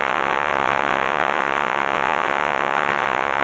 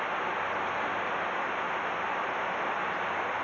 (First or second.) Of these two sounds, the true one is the second